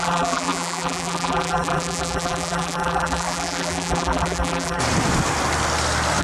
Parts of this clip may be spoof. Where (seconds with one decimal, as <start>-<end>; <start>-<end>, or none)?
0.0-4.8